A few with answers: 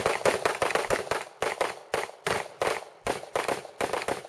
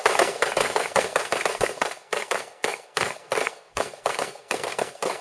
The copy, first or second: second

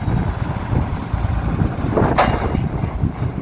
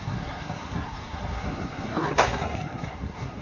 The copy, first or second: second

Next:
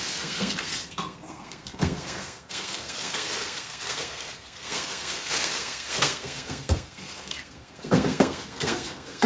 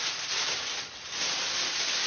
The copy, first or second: first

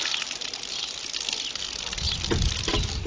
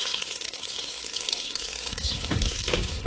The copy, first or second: second